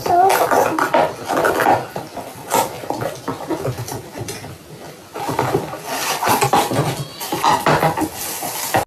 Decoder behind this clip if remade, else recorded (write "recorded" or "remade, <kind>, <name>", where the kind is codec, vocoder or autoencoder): recorded